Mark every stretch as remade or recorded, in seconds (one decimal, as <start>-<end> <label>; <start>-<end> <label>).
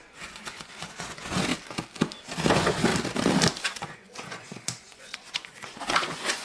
0.0-1.5 remade; 1.5-2.5 recorded; 2.5-2.9 remade; 2.9-3.8 recorded; 3.8-6.4 remade